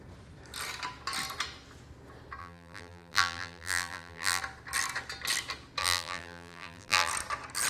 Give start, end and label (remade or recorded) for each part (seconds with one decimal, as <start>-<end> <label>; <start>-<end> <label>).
0.0-2.4 recorded; 2.4-4.4 remade; 4.4-5.8 recorded; 5.8-7.1 remade; 7.1-7.7 recorded